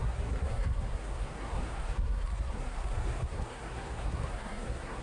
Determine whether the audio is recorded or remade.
remade